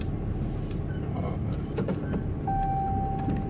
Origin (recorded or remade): recorded